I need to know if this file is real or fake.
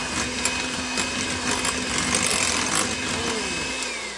real